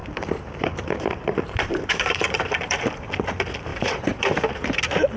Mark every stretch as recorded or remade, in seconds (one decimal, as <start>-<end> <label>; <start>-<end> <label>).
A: 0.0-3.1 remade; 3.1-3.7 recorded; 3.7-4.8 remade; 4.8-5.2 recorded

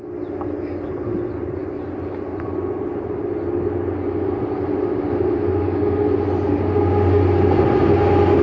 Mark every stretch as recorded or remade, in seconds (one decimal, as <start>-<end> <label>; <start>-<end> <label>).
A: 0.0-8.4 recorded

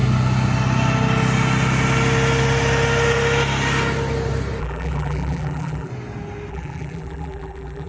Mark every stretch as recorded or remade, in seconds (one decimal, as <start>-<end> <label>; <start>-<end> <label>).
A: 0.0-4.6 recorded; 4.6-5.9 remade; 5.9-6.5 recorded; 6.5-7.9 remade

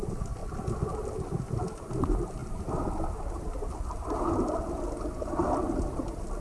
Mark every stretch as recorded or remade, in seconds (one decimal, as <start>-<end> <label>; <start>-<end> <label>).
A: 0.0-6.4 recorded

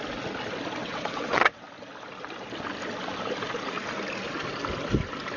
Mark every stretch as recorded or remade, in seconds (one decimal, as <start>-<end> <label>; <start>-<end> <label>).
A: 0.0-0.8 recorded; 0.8-1.6 remade; 1.6-5.4 recorded

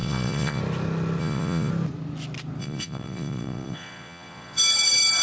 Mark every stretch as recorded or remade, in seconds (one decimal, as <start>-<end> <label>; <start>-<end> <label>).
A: 0.0-0.6 remade; 0.6-1.2 recorded; 1.2-1.7 remade; 1.7-2.6 recorded; 2.6-4.6 remade; 4.6-5.2 recorded

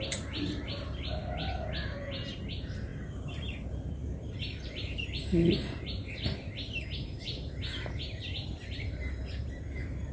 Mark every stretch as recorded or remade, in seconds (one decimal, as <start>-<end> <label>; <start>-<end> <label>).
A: 0.0-1.2 remade; 1.2-2.4 recorded; 2.4-10.1 remade